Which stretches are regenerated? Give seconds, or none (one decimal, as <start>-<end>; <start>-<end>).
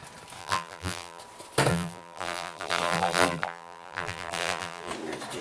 0.4-1.2; 1.7-4.9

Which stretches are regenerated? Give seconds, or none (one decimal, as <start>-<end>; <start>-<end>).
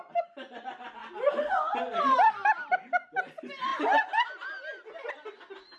none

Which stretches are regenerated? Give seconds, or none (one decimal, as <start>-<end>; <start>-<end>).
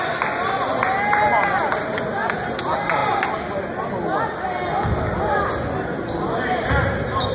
none